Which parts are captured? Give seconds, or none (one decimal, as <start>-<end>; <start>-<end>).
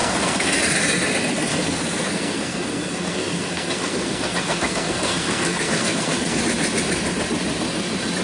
0.6-1.5; 6.4-8.2